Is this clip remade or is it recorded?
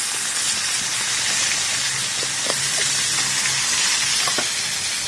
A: recorded